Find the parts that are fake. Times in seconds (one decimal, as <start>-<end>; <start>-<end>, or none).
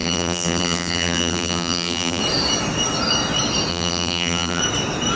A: 0.0-2.2; 3.7-4.6